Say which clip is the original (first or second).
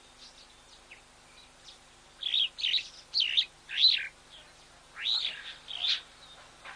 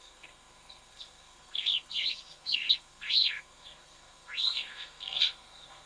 first